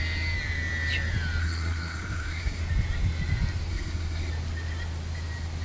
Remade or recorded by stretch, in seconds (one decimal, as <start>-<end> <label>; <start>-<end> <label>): 0.0-1.4 recorded; 1.4-2.6 remade; 2.6-3.7 recorded; 3.7-4.3 remade; 4.3-5.6 recorded